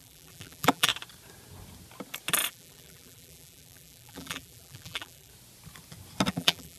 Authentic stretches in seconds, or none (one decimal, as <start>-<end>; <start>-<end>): 0.9-2.5; 5.3-6.3